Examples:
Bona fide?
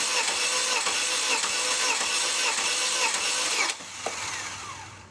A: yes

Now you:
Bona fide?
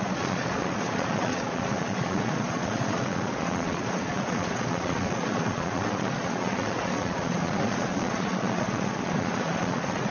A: no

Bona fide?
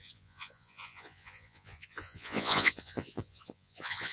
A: no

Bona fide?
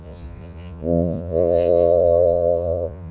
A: no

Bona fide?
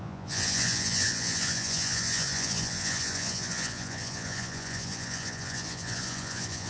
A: no